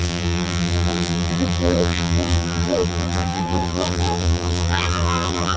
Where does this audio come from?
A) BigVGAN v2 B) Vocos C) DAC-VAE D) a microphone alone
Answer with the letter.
A